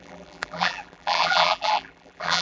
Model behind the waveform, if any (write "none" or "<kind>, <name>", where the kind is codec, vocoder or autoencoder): vocoder, BigVGAN v2